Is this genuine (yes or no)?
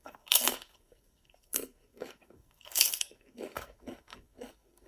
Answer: no